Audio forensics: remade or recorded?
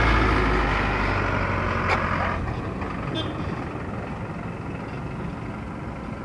recorded